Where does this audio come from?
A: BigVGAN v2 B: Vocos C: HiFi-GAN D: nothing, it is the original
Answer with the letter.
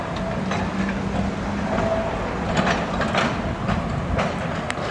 D